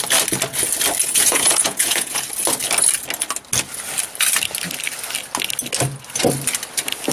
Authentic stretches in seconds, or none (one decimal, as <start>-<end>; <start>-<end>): 0.0-1.0; 2.2-7.1